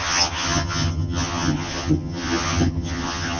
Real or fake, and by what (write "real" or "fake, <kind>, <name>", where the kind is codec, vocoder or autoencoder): fake, vocoder, HiFi-GAN